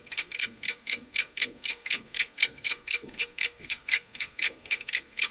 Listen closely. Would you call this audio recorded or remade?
remade